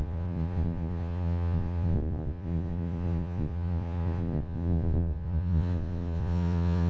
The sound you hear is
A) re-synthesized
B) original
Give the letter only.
A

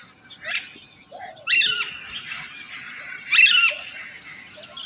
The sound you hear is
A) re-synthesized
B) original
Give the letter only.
B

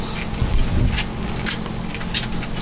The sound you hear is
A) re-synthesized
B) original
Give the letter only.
B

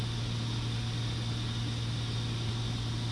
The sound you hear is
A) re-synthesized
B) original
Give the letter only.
B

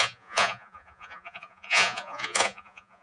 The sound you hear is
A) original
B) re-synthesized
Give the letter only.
B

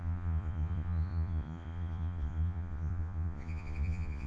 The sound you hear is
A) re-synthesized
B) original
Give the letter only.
A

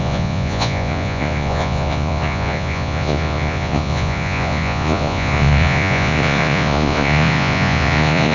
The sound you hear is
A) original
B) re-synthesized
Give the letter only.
B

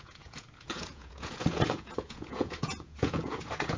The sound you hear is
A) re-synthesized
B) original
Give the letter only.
A